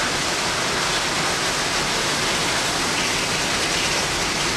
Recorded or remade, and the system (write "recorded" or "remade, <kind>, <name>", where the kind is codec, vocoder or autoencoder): recorded